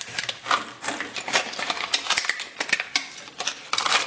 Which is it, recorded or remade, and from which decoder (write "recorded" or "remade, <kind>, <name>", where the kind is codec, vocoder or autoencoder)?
recorded